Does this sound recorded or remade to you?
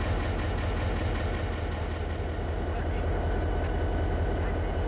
recorded